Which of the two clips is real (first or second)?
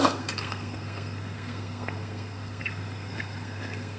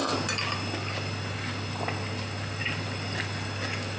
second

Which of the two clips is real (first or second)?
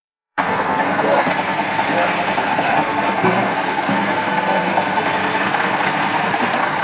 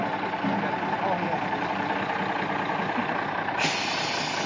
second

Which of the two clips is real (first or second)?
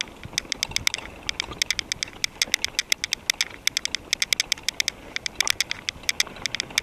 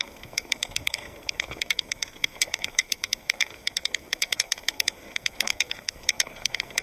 first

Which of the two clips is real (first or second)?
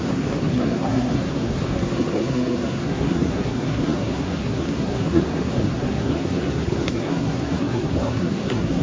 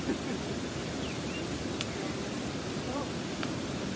second